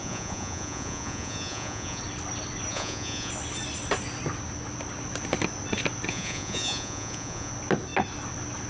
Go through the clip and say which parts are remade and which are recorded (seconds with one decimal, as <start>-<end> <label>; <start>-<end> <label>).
0.0-2.0 remade; 2.0-2.7 recorded; 2.7-3.3 remade; 3.3-6.1 recorded; 6.1-7.5 remade; 7.5-8.7 recorded